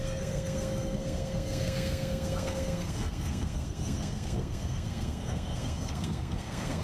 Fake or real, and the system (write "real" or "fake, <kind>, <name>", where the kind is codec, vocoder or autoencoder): fake, codec, SNAC